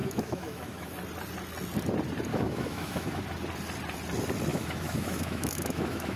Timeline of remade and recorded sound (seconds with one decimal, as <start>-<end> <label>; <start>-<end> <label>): 0.0-0.9 remade; 0.9-2.3 recorded; 2.3-3.2 remade; 3.2-4.5 recorded; 4.5-6.2 remade